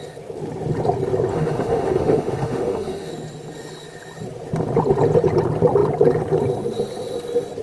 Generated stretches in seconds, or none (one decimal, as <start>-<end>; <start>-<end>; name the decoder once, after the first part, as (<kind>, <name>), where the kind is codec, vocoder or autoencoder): 1.3-3.1 (autoencoder, DAC-VAE)